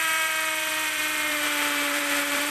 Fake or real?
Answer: fake